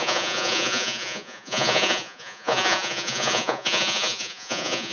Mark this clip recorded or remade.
remade